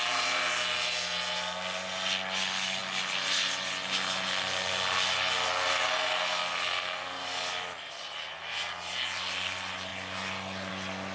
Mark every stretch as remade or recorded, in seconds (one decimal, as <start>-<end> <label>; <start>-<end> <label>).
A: 0.0-11.1 recorded